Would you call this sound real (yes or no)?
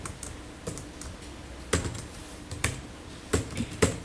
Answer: yes